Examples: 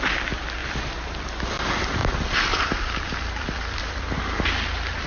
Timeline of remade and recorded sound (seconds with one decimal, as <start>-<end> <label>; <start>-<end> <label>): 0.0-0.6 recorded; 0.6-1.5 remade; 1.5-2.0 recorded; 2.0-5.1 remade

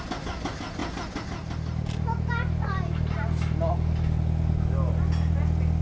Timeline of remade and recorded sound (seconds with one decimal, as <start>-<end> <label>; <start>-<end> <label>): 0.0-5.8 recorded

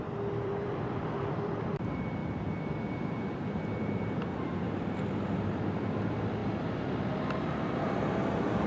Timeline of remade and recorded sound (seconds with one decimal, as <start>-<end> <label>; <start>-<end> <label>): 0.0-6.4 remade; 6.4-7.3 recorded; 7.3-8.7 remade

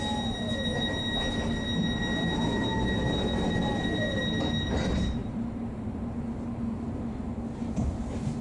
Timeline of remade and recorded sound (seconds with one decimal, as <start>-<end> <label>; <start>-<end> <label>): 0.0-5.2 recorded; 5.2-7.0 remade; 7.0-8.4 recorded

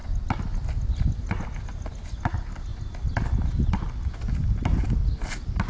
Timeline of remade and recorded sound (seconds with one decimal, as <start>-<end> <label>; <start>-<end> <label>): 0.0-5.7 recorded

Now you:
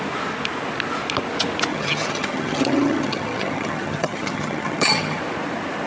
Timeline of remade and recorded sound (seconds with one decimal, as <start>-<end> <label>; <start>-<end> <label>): 0.0-1.7 recorded; 1.7-5.2 remade; 5.2-5.9 recorded

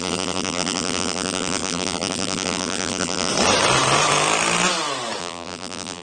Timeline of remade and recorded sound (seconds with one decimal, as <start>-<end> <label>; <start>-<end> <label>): 0.0-3.3 remade; 3.3-5.2 recorded; 5.2-6.0 remade